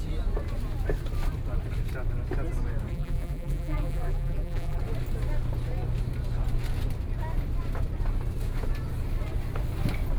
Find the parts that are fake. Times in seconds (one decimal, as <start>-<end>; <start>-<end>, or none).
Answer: 2.9-4.8